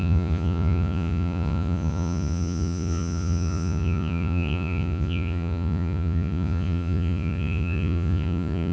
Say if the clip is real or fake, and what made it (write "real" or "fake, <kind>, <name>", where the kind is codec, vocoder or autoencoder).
fake, vocoder, Vocos